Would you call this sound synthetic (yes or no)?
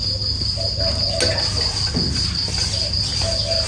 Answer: no